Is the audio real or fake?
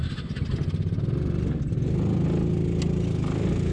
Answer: real